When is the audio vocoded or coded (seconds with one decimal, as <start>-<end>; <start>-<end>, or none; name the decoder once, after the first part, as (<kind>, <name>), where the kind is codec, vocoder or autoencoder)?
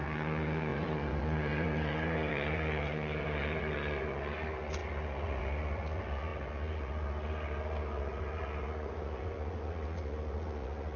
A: 0.0-11.0 (vocoder, Vocos)